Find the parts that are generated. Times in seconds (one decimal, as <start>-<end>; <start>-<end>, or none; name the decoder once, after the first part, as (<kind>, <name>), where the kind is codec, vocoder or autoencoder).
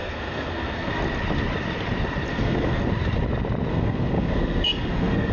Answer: 0.0-1.0 (codec, SNAC); 2.3-2.8; 3.7-5.3